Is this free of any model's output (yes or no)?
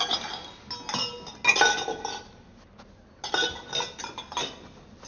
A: yes